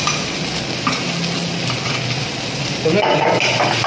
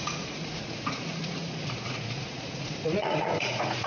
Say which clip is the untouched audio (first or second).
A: first